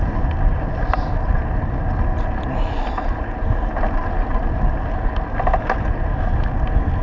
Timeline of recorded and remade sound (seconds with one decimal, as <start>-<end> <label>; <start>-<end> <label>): 0.0-7.0 recorded